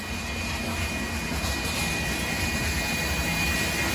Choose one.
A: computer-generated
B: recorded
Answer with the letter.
B